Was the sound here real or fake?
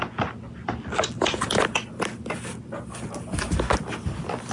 real